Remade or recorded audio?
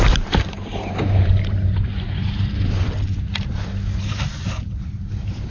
remade